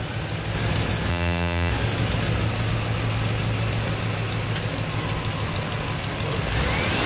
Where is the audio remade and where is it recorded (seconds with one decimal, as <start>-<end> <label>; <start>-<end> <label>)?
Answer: 0.0-1.1 recorded; 1.1-1.7 remade; 1.7-7.1 recorded